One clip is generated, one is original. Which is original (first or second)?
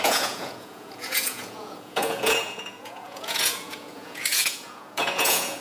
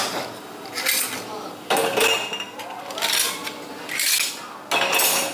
second